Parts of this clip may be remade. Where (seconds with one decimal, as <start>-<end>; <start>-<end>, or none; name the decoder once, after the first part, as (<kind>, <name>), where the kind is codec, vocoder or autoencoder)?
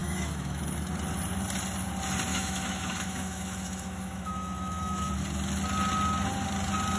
0.0-0.6 (autoencoder, DAC-VAE); 2.3-5.1